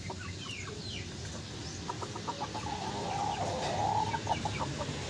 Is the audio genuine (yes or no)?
yes